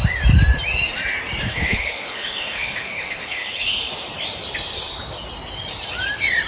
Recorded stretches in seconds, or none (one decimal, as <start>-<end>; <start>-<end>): 0.0-1.5; 3.9-6.5